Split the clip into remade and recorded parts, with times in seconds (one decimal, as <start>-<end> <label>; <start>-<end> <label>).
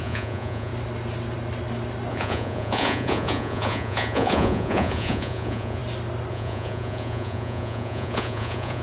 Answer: 0.0-0.7 remade; 0.7-2.1 recorded; 2.1-5.8 remade; 5.8-6.3 recorded; 6.3-8.8 remade